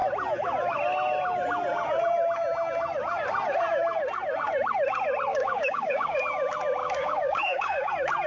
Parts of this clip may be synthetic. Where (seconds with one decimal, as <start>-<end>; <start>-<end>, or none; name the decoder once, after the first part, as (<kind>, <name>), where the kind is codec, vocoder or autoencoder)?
5.3-6.2 (codec, DAC); 6.8-7.9